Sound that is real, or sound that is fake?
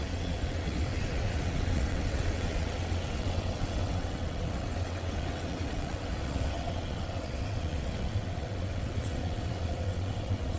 fake